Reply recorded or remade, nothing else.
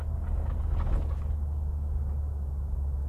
recorded